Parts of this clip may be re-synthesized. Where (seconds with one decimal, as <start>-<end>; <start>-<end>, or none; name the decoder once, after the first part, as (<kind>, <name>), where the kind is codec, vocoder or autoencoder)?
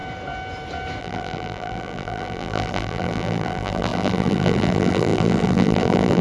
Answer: 1.0-6.2 (vocoder, BigVGAN v2)